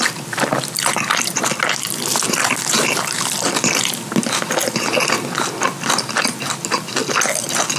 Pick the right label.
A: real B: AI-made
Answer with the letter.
A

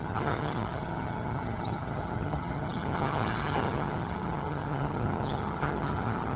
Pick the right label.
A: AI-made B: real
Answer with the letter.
A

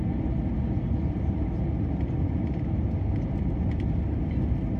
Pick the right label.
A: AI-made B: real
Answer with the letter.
B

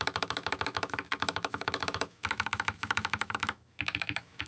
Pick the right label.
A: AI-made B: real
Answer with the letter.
A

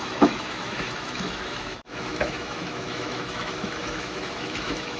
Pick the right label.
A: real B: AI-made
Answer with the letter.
B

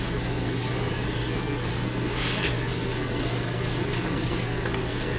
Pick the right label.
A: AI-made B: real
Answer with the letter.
A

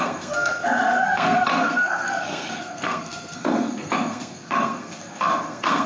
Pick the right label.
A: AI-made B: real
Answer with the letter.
A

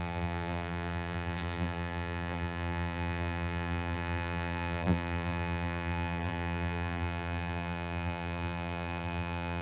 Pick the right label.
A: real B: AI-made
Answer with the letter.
B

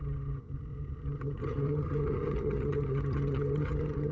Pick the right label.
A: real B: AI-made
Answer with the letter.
B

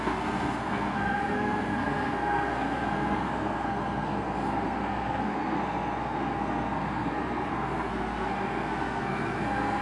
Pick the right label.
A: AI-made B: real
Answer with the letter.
A